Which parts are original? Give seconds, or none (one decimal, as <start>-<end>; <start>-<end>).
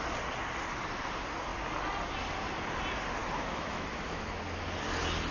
0.0-3.2; 4.4-5.3